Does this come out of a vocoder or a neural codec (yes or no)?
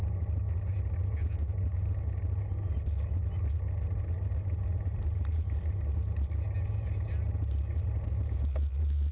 no